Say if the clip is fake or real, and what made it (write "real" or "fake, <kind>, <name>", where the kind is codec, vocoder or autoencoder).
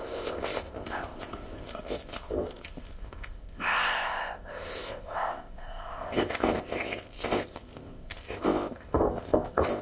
fake, codec, ZipCodec